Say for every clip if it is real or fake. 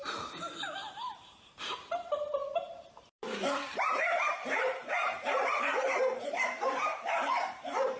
fake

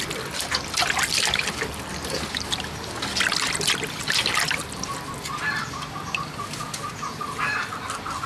real